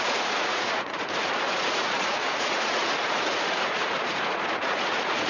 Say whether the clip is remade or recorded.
remade